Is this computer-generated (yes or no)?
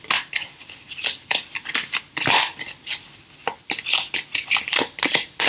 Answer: no